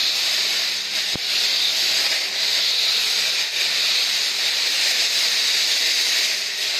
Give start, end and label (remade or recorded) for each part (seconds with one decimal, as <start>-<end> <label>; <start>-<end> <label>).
0.0-6.8 recorded